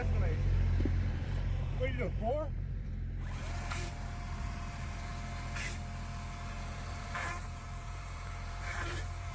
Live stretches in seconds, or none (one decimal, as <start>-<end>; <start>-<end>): 5.1-6.5